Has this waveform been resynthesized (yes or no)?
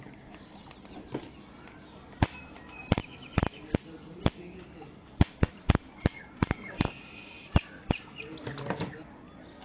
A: no